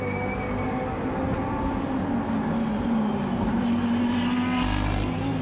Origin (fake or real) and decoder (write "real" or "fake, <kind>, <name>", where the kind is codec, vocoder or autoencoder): real